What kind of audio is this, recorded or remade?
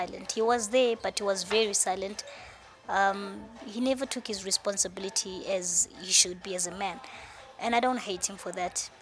recorded